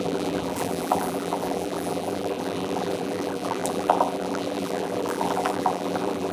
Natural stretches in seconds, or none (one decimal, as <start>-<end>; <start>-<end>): none